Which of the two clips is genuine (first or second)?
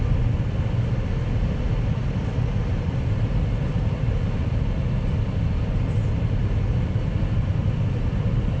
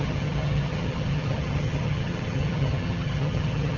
first